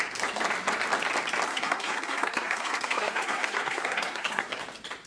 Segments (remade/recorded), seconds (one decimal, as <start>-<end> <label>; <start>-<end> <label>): 0.0-1.5 recorded; 1.5-4.6 remade; 4.6-5.1 recorded